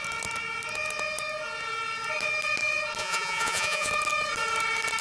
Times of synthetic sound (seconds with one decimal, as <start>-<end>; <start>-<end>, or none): 3.0-3.9